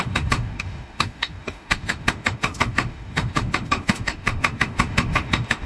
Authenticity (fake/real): fake